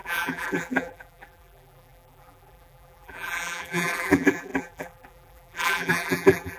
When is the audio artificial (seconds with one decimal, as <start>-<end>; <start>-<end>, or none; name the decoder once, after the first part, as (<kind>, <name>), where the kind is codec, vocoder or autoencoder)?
0.0-6.6 (vocoder, BigVGAN v2)